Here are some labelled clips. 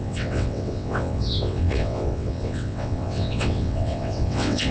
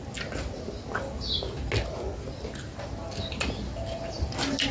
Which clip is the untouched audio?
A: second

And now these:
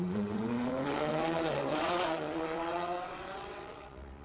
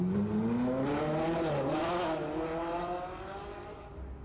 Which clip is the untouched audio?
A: second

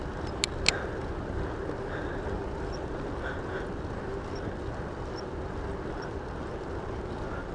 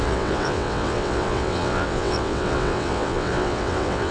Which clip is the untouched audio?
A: first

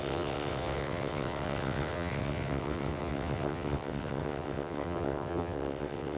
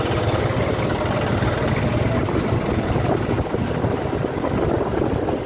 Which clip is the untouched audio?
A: second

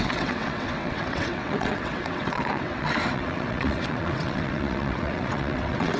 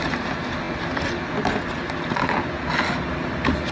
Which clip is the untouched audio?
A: second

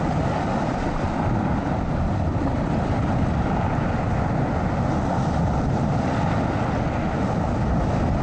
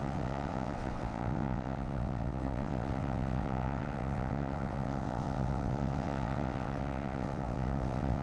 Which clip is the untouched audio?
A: first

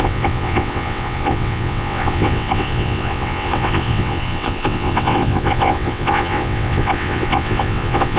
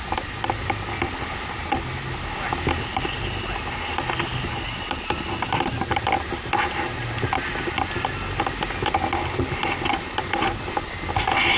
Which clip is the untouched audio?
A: second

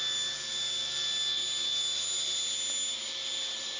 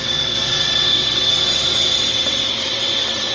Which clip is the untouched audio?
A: first